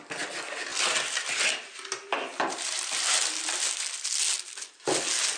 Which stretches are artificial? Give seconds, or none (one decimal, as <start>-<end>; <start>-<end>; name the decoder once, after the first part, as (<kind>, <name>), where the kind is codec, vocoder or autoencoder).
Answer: 2.3-3.6 (vocoder, BigVGAN v2)